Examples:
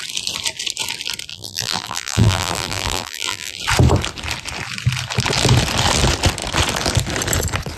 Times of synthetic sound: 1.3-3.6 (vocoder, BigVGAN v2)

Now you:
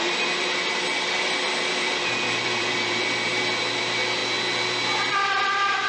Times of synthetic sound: 0.0-4.2 (vocoder, BigVGAN v2); 5.1-5.9

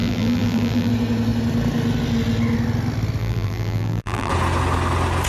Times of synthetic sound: 0.0-0.9 (vocoder, BigVGAN v2); 3.2-4.3

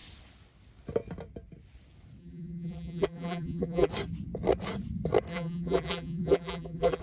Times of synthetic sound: 2.2-3.9 (vocoder, BigVGAN v2); 5.3-7.0

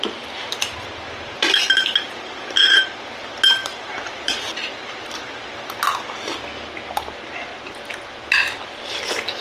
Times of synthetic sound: 3.6-5.5 (vocoder, BigVGAN v2)

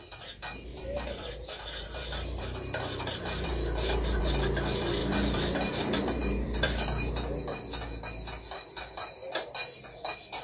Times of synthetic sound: 0.7-4.2 (vocoder, BigVGAN v2); 5.0-7.1

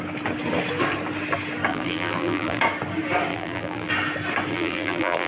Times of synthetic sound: 1.7-2.6 (vocoder, BigVGAN v2); 3.3-3.9; 4.5-5.3